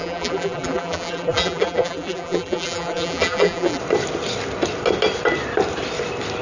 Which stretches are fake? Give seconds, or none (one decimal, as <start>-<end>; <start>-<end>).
0.0-3.8